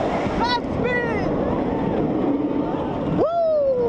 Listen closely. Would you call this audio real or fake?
real